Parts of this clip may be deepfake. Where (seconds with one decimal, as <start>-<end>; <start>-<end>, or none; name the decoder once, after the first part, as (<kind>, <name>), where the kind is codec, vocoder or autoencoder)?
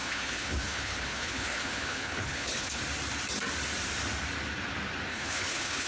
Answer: 0.0-2.8 (codec, HILCodec); 5.1-5.9